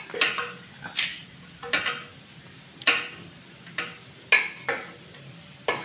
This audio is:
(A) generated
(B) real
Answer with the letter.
B